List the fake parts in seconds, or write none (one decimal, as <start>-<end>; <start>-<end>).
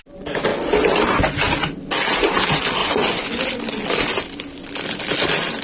2.8-3.4